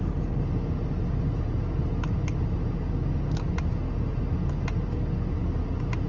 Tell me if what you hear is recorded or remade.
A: recorded